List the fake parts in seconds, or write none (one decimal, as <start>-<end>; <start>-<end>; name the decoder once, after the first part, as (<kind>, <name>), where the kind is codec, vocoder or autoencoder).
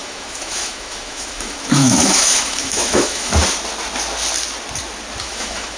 0.0-3.3 (autoencoder, DAC-VAE); 5.2-5.8